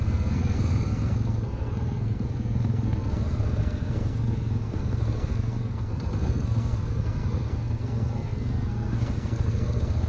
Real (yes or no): no